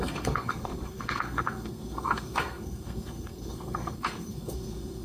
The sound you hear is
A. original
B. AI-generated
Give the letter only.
B